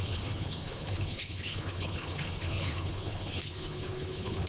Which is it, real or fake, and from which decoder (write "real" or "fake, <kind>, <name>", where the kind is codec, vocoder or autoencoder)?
fake, codec, HILCodec